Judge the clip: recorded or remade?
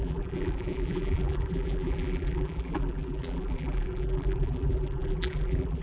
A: remade